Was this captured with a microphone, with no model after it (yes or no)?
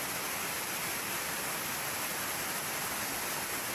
yes